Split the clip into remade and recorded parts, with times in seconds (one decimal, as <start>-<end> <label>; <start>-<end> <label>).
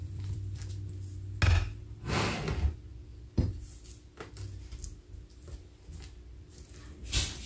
0.0-0.7 remade; 0.7-7.5 recorded